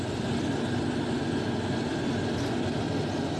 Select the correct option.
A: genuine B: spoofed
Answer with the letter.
A